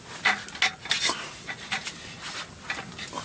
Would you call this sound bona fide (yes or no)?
yes